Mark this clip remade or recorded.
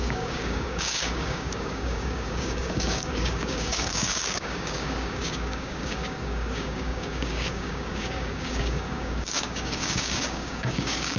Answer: remade